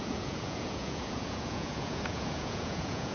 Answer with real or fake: fake